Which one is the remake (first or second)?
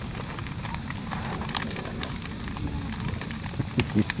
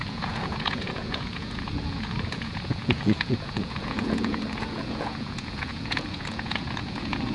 second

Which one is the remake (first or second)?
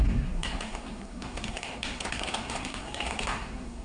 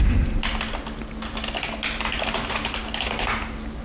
first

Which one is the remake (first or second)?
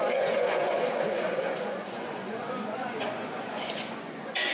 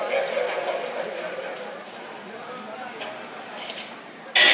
first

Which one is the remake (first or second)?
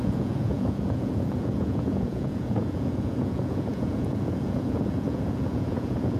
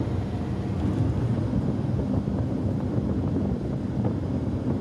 first